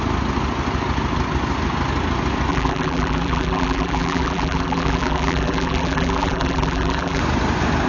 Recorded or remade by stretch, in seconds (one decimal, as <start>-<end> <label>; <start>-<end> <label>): 0.0-2.5 recorded; 2.5-7.2 remade; 7.2-7.9 recorded